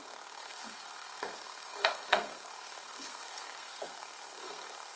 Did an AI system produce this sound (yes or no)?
yes